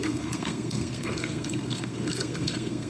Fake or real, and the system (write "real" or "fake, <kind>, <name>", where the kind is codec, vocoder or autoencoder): fake, codec, SNAC